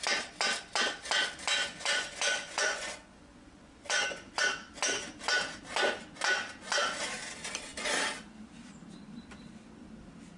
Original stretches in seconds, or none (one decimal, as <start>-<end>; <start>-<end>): 0.0-1.6; 4.4-10.4